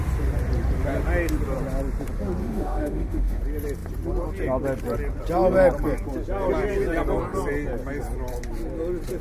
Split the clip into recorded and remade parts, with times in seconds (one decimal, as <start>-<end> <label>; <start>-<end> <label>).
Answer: 0.0-2.4 recorded; 2.4-3.4 remade; 3.4-9.2 recorded